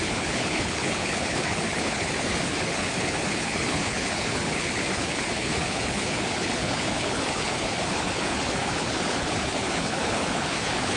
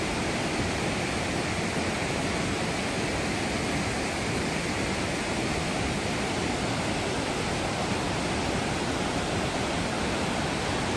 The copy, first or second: first